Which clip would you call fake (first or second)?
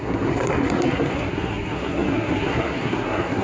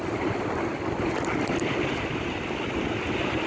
first